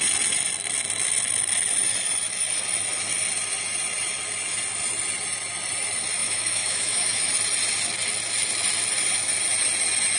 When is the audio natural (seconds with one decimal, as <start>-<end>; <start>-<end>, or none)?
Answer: 0.0-6.2; 7.3-10.2